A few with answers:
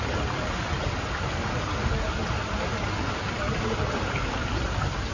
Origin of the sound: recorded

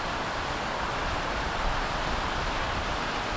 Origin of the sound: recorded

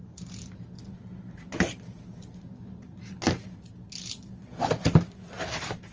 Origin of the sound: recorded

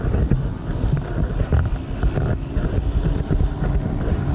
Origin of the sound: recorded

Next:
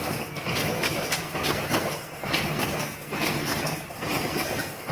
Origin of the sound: remade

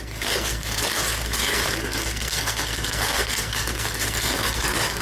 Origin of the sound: remade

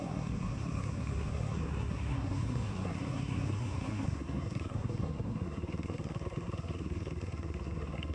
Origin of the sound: remade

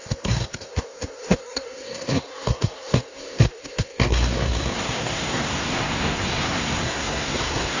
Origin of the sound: remade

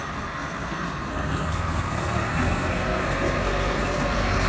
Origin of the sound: remade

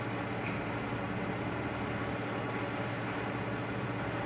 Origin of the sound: recorded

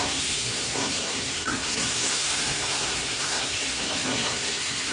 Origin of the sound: remade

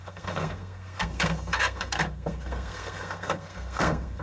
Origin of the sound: remade